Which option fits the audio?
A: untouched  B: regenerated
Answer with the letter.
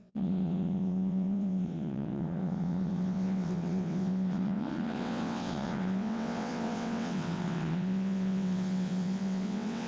B